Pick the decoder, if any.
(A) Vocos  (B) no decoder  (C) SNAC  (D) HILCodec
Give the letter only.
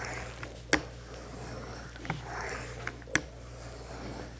B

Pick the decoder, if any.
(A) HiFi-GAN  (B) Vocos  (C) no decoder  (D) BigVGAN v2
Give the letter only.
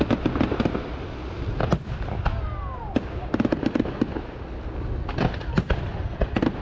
C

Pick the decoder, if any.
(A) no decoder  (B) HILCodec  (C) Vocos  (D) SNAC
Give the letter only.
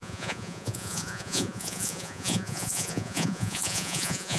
C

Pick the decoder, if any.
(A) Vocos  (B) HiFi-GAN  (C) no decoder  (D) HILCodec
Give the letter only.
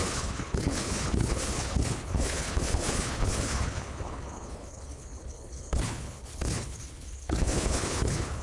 D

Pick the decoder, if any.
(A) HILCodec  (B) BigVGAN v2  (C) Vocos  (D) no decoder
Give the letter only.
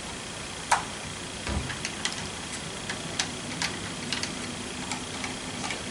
D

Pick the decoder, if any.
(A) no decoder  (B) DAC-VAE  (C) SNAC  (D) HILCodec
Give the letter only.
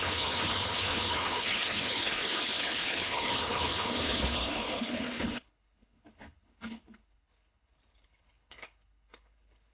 D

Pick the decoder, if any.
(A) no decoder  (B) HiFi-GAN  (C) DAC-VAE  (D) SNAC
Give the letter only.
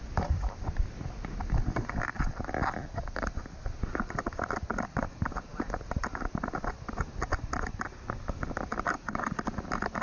A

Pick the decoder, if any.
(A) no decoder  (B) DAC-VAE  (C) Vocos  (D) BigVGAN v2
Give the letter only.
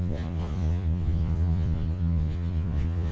C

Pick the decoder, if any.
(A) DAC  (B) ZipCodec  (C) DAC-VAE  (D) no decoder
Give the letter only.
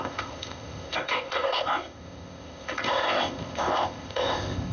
B